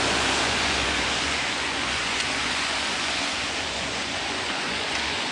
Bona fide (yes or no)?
no